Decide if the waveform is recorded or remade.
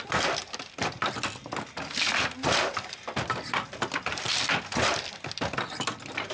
remade